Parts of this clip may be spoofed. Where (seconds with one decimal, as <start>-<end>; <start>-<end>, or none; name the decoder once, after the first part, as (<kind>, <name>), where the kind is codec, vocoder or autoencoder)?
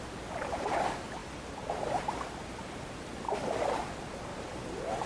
1.2-3.8 (vocoder, BigVGAN v2); 4.3-5.1